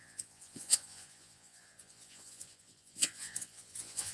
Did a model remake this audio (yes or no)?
yes